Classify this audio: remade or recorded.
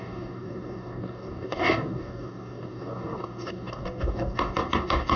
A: remade